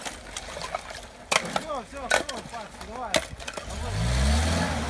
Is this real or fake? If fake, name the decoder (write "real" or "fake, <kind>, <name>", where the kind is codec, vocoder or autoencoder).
real